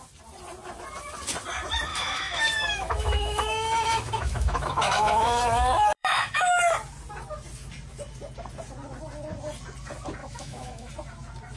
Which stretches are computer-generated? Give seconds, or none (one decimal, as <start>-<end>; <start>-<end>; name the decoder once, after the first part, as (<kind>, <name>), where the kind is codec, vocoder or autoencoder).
1.9-6.6 (autoencoder, DAC-VAE); 10.2-10.9